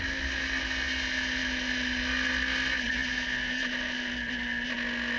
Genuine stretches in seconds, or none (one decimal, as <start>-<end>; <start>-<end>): 0.0-5.2